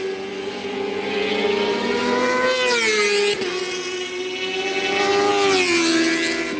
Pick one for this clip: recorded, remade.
recorded